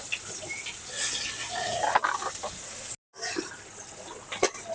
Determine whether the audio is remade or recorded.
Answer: recorded